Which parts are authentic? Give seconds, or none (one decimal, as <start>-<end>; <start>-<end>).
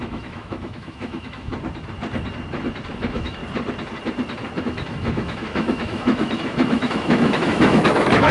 1.5-3.0; 3.4-4.6